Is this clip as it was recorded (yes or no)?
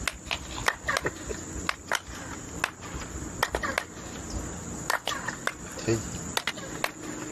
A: yes